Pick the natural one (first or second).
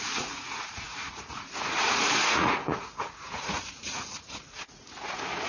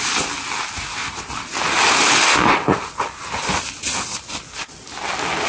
second